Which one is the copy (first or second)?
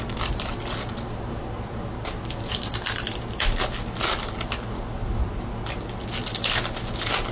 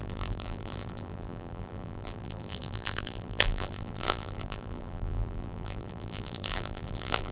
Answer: second